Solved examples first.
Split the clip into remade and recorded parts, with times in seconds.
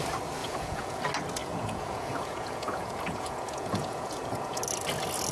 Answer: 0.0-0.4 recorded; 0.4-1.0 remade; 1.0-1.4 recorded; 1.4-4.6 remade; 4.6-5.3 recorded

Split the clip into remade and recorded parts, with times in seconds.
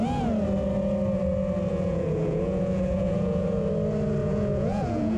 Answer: 0.0-1.7 recorded; 1.7-3.7 remade; 3.7-4.2 recorded; 4.2-5.2 remade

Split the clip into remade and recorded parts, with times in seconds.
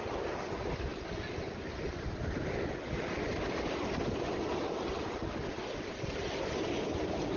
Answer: 0.0-7.4 recorded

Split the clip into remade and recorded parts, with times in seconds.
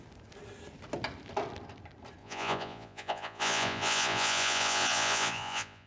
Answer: 0.0-2.2 recorded; 2.2-5.9 remade